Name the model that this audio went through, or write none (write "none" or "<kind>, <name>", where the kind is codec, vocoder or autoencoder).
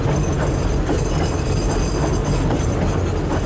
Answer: none